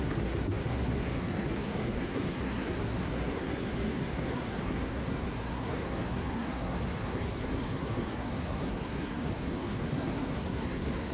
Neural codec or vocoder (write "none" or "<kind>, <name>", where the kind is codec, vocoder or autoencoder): codec, SNAC